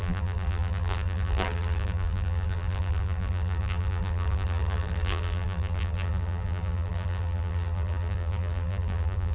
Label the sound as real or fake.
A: fake